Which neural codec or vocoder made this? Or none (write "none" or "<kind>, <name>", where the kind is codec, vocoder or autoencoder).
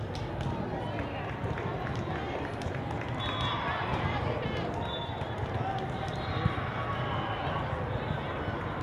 none